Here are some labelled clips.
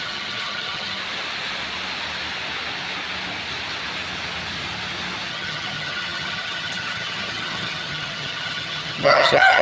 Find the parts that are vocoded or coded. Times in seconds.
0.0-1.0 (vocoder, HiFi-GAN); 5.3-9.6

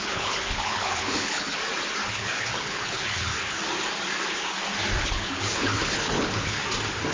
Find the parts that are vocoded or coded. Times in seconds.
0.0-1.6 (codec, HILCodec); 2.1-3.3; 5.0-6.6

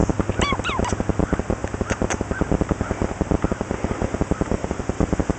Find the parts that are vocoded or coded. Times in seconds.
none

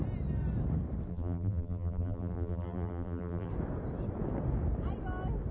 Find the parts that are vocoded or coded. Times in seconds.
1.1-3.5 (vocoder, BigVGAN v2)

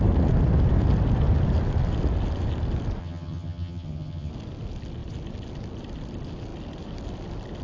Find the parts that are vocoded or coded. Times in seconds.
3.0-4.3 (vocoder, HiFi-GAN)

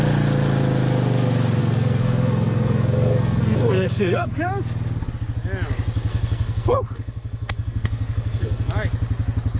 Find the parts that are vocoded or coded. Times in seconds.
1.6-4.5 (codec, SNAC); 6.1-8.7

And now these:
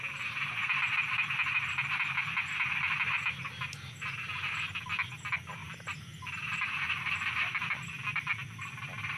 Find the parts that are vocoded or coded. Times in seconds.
5.6-8.3 (vocoder, BigVGAN v2)